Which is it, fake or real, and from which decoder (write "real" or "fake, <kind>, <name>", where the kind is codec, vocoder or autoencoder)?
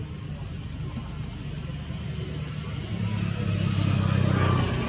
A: real